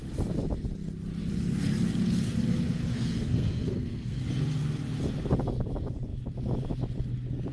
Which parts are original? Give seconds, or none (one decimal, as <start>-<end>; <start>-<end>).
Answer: 0.0-2.8; 4.2-7.5